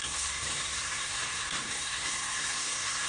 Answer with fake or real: fake